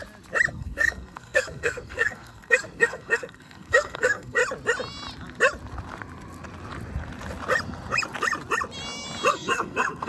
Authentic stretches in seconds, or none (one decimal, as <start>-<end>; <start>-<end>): 0.0-0.5; 4.4-9.3